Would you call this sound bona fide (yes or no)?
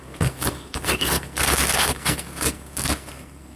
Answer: no